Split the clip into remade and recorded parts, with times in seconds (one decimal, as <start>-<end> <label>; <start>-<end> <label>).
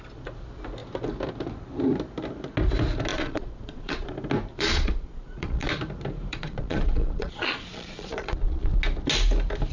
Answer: 0.0-3.1 recorded; 3.1-4.1 remade; 4.1-4.5 recorded; 4.5-5.7 remade; 5.7-6.3 recorded; 6.3-8.7 remade; 8.7-9.7 recorded